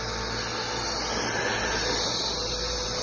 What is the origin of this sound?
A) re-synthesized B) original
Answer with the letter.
B